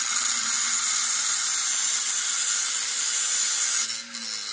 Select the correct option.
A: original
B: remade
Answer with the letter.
A